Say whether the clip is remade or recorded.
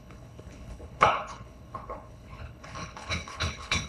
remade